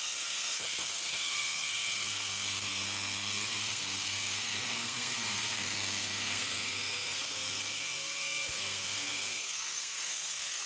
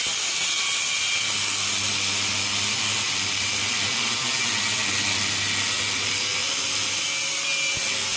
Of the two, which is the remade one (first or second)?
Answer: first